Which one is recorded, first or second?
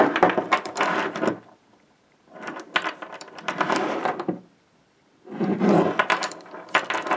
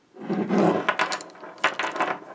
second